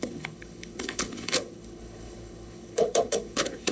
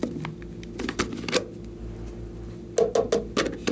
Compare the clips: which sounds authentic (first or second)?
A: second